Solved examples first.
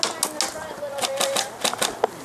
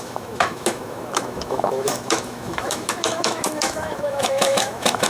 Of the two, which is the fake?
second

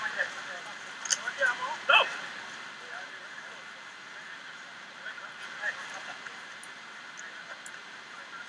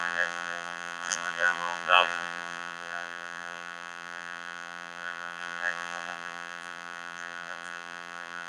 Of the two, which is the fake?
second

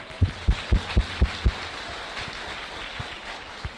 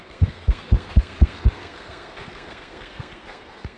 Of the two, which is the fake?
second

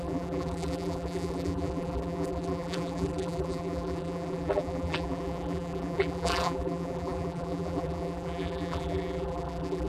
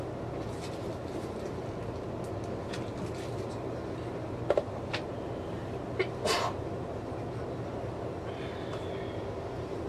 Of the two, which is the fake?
first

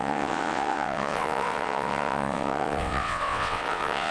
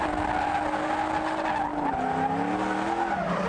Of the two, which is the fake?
first